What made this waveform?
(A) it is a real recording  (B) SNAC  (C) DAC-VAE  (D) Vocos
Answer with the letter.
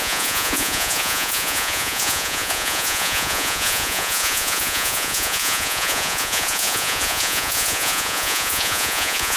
D